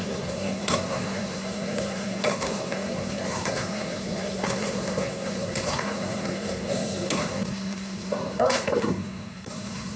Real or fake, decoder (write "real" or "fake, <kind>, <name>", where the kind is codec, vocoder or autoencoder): fake, codec, SNAC